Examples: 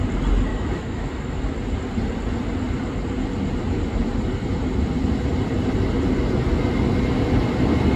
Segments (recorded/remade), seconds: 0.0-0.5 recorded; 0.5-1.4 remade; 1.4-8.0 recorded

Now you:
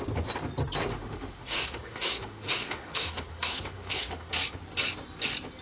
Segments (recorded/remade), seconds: 0.0-0.9 recorded; 0.9-4.3 remade; 4.3-5.6 recorded

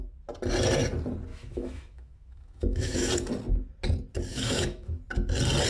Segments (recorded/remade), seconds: 0.0-1.3 recorded; 1.3-3.1 remade; 3.1-4.3 recorded; 4.3-5.0 remade; 5.0-5.7 recorded

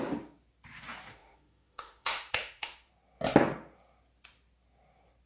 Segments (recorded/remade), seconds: 0.0-1.1 recorded; 1.1-2.9 remade; 2.9-5.3 recorded